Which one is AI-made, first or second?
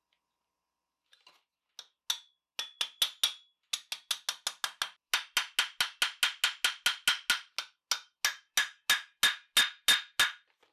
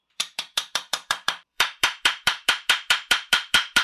second